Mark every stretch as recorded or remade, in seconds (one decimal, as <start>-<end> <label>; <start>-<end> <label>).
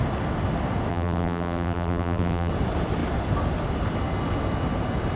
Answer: 0.0-0.9 recorded; 0.9-2.5 remade; 2.5-5.2 recorded